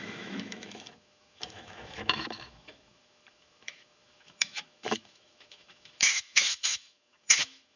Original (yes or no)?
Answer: no